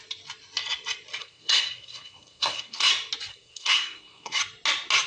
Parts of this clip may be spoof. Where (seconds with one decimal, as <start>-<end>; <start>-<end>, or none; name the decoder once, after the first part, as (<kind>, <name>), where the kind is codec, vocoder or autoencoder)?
1.2-2.9 (codec, SNAC); 3.3-4.4